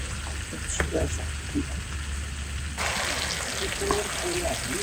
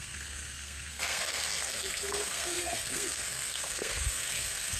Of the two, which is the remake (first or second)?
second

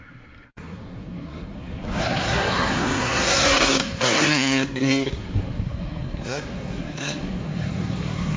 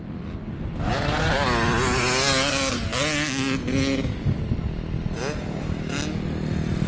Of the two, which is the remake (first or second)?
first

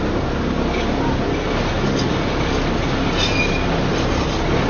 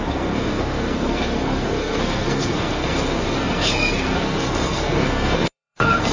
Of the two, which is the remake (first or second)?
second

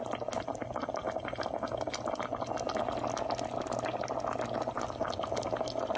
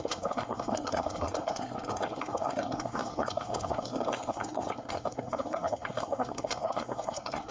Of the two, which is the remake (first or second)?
second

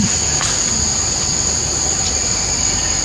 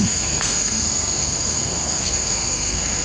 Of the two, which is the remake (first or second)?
second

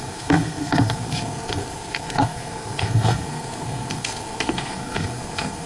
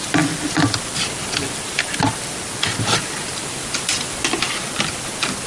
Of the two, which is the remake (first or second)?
first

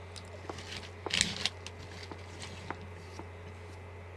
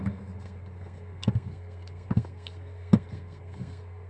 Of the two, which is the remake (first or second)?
second